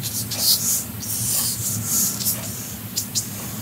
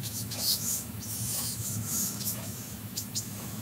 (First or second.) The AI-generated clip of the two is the second